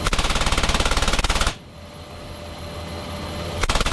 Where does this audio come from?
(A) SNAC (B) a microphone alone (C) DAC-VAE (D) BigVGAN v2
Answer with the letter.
B